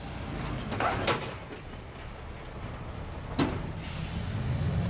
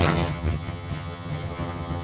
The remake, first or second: second